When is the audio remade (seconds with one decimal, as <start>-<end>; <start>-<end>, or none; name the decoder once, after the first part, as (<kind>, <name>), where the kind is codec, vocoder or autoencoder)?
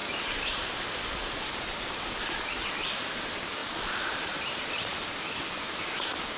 0.0-3.6 (vocoder, BigVGAN v2); 4.1-4.9; 5.9-6.4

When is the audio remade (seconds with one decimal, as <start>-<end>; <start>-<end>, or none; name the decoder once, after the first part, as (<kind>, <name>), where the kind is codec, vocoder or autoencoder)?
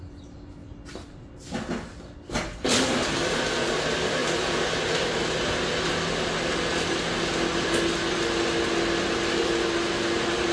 none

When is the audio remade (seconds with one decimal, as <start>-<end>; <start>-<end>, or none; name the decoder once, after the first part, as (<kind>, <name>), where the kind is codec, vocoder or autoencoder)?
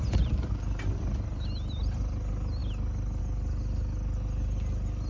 none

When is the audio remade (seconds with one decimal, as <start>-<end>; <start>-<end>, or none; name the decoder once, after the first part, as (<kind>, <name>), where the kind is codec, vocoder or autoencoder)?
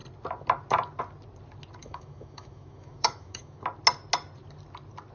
1.8-3.6 (autoencoder, DAC-VAE)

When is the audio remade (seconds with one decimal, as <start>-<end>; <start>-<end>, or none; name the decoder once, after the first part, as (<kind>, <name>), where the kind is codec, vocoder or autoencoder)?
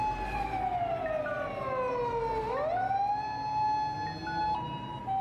none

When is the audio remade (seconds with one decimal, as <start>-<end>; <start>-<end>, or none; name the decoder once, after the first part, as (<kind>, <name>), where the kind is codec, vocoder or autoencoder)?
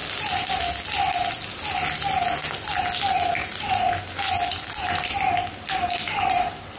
3.4-3.9 (vocoder, Vocos)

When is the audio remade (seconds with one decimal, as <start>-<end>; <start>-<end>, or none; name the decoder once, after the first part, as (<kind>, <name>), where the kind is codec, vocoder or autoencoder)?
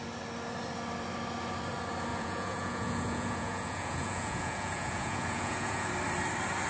2.1-5.9 (vocoder, Vocos)